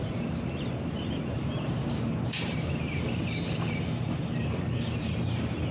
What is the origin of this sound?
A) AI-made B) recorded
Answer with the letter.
A